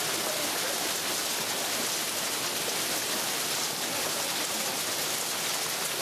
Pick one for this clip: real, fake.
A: real